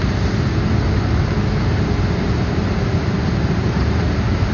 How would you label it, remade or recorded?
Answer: remade